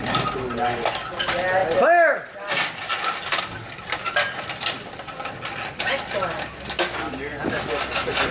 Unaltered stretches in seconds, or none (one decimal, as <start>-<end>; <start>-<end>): 0.0-8.3